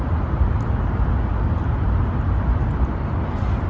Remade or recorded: recorded